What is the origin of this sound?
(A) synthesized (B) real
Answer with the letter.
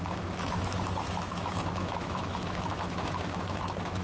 A